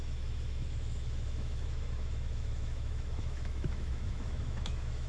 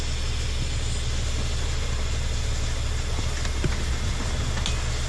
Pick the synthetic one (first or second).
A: first